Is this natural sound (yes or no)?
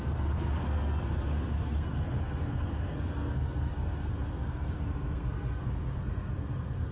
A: no